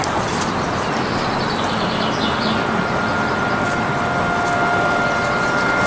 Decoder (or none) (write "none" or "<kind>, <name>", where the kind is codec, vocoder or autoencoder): none